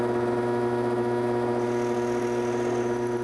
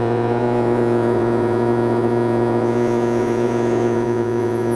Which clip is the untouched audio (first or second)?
first